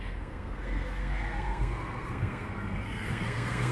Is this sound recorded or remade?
remade